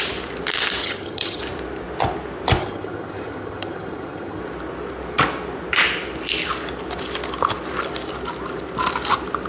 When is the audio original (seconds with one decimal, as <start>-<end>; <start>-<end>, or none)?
0.0-0.8; 1.4-2.6; 4.4-9.5